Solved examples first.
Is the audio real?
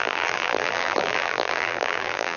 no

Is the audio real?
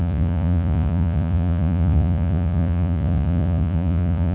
no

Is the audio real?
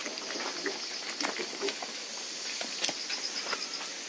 yes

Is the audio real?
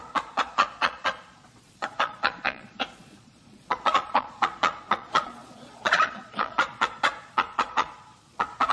no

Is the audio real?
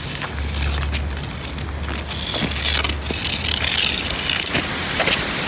yes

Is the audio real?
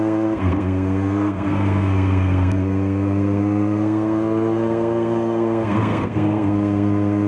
no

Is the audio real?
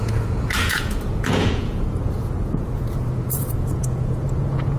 no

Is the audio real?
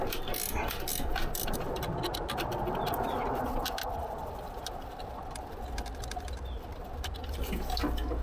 yes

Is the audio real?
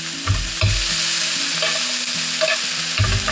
yes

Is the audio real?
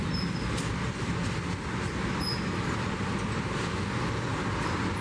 yes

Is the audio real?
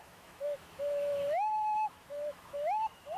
no